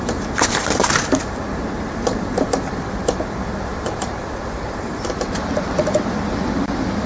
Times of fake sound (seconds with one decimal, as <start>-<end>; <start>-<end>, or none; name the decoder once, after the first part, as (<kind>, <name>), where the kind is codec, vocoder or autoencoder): 0.8-2.7 (vocoder, BigVGAN v2); 3.7-5.0